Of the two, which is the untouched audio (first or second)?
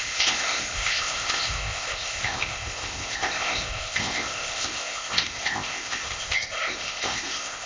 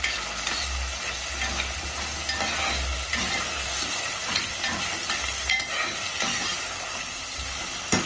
second